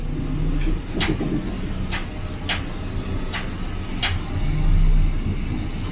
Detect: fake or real real